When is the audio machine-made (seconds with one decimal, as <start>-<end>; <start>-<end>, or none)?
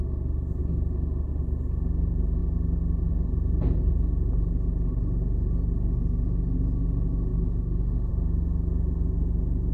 7.3-8.1